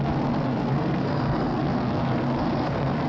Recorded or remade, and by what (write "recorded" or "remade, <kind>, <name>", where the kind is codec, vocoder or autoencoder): remade, codec, SNAC